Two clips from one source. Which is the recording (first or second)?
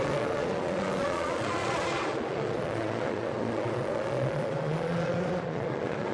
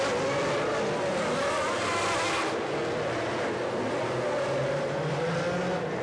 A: second